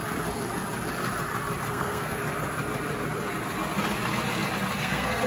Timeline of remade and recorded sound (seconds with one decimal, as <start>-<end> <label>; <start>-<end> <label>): 0.0-1.7 recorded; 1.7-2.2 remade; 2.2-4.8 recorded; 4.8-5.3 remade